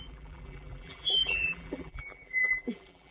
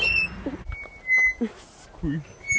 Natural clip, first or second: second